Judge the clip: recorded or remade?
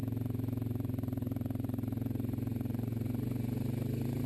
recorded